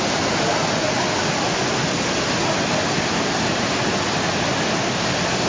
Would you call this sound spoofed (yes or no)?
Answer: no